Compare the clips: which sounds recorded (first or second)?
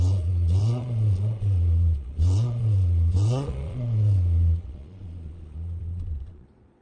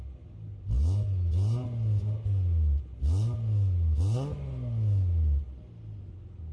second